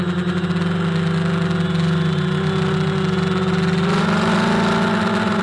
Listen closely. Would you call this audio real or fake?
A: real